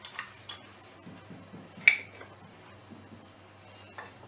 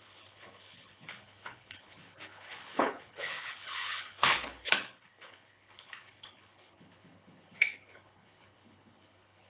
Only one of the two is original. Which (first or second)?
first